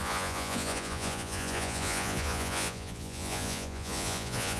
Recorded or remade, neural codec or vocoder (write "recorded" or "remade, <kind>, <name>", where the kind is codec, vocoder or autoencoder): remade, vocoder, Vocos